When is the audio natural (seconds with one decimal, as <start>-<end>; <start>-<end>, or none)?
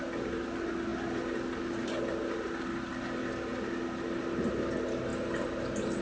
0.0-6.0